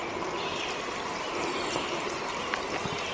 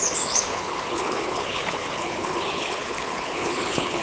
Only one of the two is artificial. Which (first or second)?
second